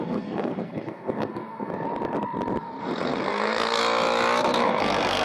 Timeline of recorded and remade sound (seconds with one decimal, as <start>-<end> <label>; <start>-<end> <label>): 0.0-1.7 remade; 1.7-2.8 recorded; 2.8-3.8 remade; 3.8-4.6 recorded; 4.6-5.2 remade